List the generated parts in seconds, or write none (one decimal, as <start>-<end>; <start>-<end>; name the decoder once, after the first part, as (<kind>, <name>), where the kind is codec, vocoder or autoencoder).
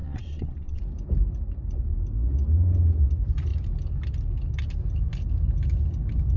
0.0-0.8 (vocoder, WaveNeXt)